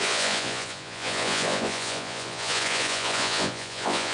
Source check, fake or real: fake